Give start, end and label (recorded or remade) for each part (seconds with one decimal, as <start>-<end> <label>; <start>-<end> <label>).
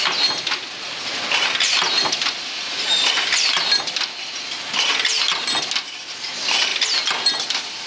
0.0-7.9 recorded